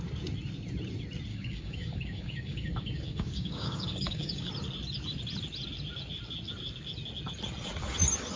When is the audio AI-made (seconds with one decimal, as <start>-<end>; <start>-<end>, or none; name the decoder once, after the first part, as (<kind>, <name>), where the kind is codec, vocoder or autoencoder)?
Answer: 1.3-4.5 (codec, DAC)